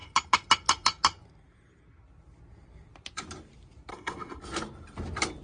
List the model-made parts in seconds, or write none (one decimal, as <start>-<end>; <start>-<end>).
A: 3.9-4.4